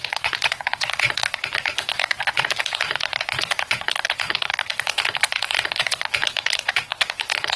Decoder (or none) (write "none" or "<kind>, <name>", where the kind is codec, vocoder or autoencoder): vocoder, Vocos